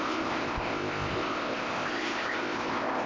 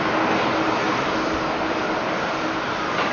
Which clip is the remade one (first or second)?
first